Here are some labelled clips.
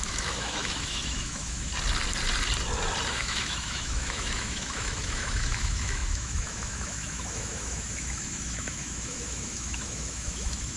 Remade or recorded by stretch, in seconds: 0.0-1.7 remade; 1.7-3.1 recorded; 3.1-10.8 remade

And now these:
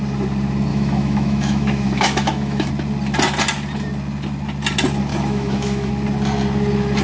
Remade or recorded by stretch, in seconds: 0.0-0.7 recorded; 0.7-2.7 remade; 2.7-5.1 recorded; 5.1-5.9 remade; 5.9-7.0 recorded

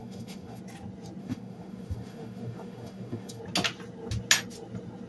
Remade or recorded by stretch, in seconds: 0.0-0.6 remade; 0.6-1.2 recorded; 1.2-3.4 remade; 3.4-5.1 recorded